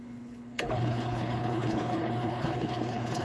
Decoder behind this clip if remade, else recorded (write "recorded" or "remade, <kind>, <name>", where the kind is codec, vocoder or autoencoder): remade, codec, HILCodec